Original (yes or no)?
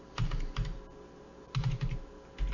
yes